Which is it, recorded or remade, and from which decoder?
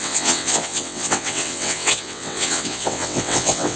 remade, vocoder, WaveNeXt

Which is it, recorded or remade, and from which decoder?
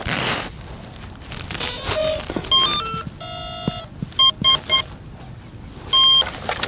recorded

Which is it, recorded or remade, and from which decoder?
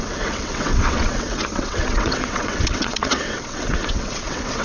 remade, vocoder, WaveNeXt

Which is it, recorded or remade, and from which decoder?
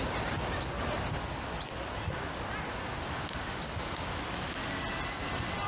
recorded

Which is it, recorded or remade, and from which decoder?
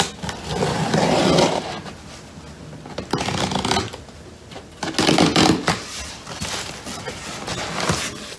recorded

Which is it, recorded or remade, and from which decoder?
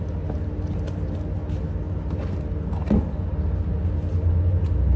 recorded